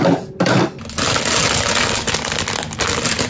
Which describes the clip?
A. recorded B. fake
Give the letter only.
A